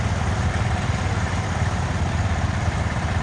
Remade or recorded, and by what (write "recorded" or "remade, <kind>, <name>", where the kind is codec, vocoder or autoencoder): remade, vocoder, BigVGAN v2